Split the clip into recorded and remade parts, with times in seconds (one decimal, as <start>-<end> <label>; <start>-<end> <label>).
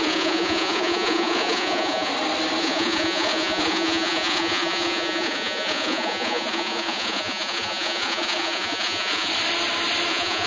0.0-2.1 remade; 2.1-2.6 recorded; 2.6-9.3 remade; 9.3-10.1 recorded; 10.1-10.5 remade